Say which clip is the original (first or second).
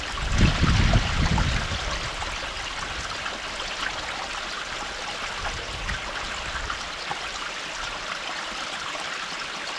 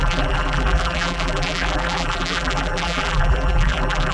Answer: first